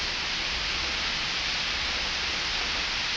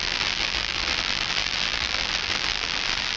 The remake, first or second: second